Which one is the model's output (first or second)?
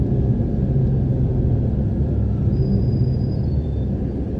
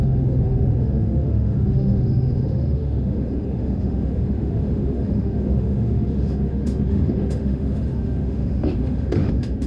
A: second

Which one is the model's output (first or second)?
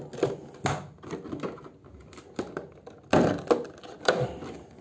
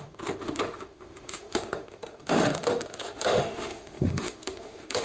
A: second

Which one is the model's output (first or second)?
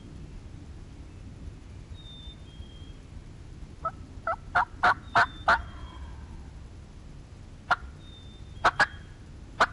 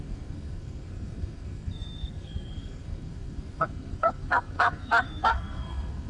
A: second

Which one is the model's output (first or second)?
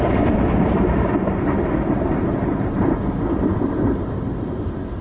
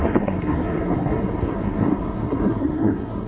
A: second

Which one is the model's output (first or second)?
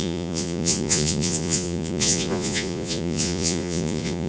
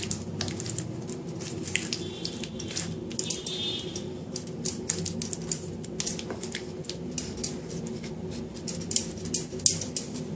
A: first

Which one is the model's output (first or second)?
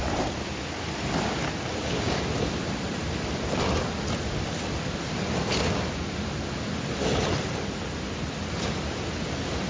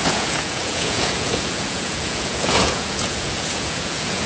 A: second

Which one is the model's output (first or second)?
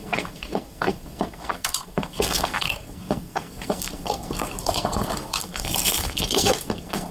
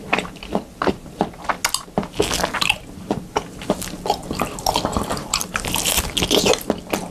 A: first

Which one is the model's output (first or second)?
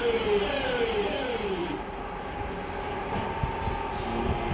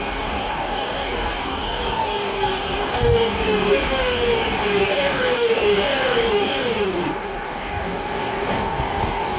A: second